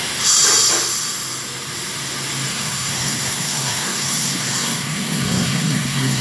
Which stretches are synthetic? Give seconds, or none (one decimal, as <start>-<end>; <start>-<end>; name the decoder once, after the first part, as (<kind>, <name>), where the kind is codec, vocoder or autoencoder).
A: 2.5-6.2 (codec, SNAC)